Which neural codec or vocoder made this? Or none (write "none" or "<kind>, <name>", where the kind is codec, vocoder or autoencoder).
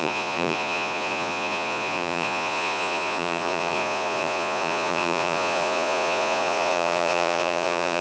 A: vocoder, Vocos